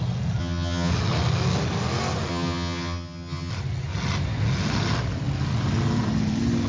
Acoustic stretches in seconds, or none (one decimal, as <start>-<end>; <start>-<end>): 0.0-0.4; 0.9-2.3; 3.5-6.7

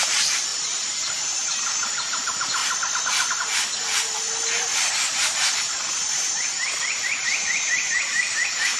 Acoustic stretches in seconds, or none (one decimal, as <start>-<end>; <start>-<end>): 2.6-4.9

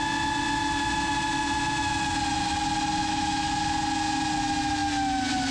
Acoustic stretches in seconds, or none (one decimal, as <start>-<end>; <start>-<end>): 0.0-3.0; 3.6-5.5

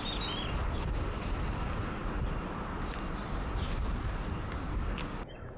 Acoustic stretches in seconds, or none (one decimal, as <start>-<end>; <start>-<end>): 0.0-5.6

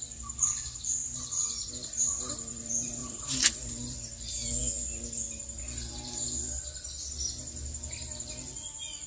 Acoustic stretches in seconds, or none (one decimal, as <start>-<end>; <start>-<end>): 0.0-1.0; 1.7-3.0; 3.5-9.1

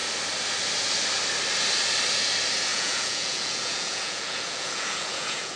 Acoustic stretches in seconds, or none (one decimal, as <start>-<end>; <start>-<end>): 0.0-2.7

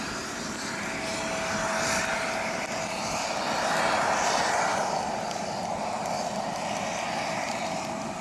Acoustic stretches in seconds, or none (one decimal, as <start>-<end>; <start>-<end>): 0.0-4.7; 5.3-8.2